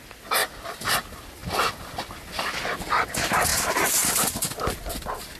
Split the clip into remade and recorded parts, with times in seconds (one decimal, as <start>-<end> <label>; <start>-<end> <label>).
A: 0.0-5.4 recorded